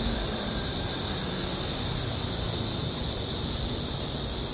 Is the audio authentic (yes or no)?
no